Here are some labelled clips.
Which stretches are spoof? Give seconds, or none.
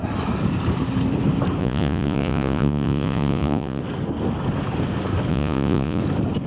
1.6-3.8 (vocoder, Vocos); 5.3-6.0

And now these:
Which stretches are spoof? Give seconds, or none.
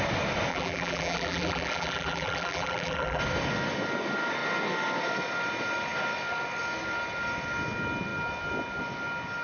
0.5-3.2 (vocoder, BigVGAN v2)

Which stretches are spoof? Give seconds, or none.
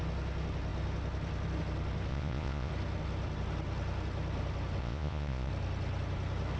2.1-2.7 (vocoder, Vocos); 4.8-5.5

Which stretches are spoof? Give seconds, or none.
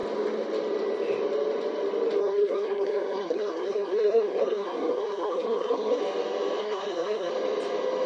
2.2-6.0 (codec, SNAC); 6.6-7.3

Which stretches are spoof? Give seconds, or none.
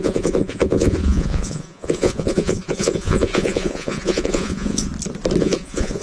0.0-4.9 (vocoder, Vocos); 5.4-6.0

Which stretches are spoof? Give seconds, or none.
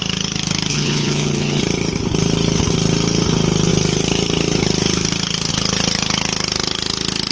0.7-1.6 (vocoder, HiFi-GAN)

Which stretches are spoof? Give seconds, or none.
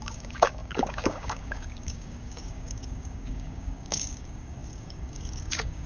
0.0-5.9 (codec, DAC)